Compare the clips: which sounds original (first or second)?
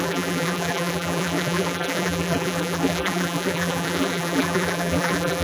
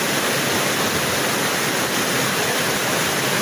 second